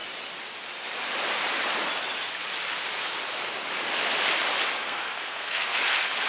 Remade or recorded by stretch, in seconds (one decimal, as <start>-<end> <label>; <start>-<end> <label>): 0.0-4.8 recorded; 4.8-5.8 remade; 5.8-6.3 recorded